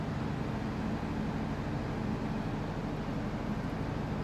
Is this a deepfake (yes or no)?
no